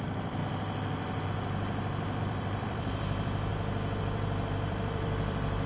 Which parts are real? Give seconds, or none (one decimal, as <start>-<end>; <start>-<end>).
0.4-2.2; 3.5-4.0